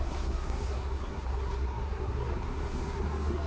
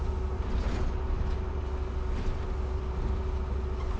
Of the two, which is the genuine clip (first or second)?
second